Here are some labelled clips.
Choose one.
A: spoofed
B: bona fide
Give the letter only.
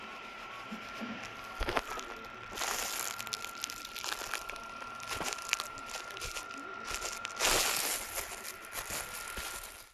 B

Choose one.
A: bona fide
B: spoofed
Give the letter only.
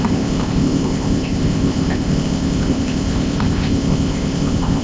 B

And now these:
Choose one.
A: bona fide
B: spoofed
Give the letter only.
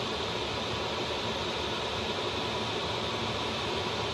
A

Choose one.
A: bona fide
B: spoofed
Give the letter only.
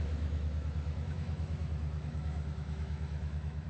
B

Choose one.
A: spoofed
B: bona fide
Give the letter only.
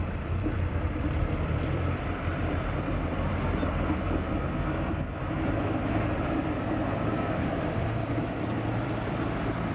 A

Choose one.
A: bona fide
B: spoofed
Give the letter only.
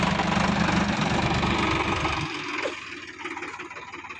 A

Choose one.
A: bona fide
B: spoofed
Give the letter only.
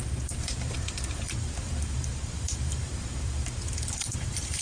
B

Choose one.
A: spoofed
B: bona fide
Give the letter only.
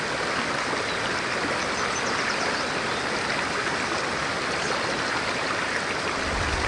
B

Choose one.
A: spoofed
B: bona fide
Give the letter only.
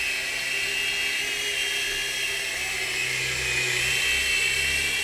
B